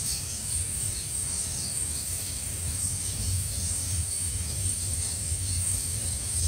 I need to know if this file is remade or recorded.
remade